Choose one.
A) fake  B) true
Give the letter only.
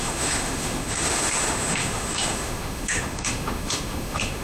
A